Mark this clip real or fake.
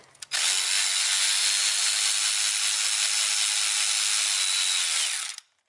real